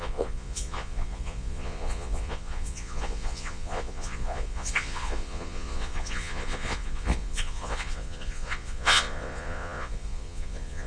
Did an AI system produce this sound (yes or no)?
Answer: yes